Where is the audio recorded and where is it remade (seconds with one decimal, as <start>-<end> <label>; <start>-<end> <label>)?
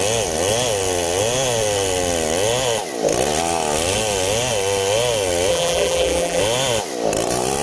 0.0-5.5 recorded; 5.5-6.4 remade; 6.4-7.6 recorded